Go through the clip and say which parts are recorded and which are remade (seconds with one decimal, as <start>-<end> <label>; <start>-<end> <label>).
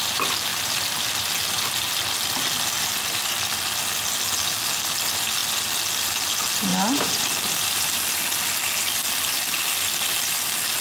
0.0-0.5 recorded; 0.5-1.8 remade; 1.8-6.7 recorded; 6.7-8.2 remade; 8.2-10.8 recorded